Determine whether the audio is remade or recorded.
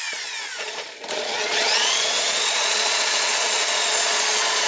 remade